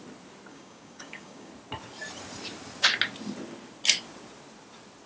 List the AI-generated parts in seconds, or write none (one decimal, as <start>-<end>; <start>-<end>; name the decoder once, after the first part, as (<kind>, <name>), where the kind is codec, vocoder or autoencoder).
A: 0.5-1.5 (codec, DAC)